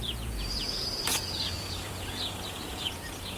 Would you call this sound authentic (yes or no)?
no